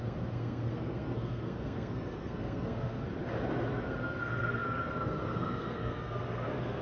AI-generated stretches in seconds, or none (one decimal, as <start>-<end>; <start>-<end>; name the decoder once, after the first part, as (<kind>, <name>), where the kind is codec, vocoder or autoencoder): 0.0-3.1 (codec, SNAC); 3.7-6.8